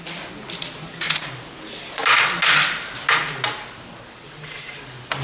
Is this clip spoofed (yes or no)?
no